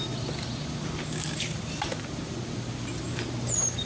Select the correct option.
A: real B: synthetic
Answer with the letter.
A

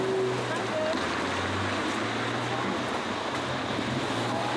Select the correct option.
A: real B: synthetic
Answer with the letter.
A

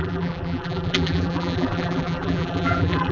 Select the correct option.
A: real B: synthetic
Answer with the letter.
B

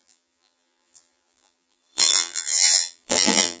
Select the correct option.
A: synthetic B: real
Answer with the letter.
A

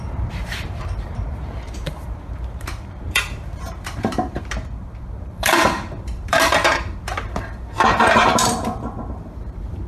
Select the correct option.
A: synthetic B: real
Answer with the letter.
A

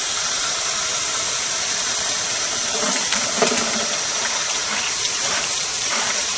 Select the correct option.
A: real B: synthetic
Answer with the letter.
B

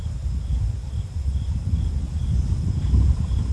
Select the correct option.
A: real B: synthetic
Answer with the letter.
B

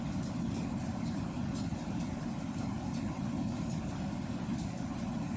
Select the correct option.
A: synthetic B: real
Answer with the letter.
B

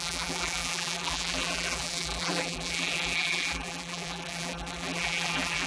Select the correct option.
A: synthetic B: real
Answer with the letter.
A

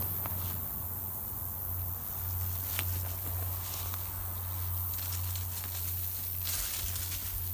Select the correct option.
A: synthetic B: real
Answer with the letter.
B